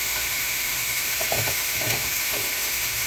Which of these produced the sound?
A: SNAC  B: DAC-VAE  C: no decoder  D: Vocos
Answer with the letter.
B